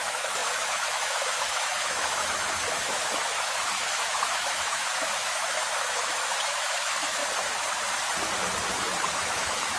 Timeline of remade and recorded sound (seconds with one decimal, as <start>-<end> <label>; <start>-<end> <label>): 0.0-7.2 remade; 7.2-9.1 recorded; 9.1-9.8 remade